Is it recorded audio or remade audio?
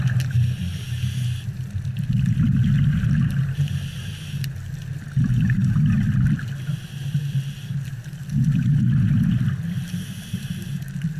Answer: recorded